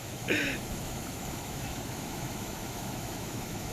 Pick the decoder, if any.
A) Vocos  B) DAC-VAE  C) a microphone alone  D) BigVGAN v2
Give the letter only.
B